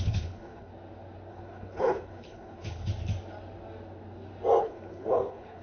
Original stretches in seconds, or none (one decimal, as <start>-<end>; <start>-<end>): 0.7-1.3; 2.9-4.6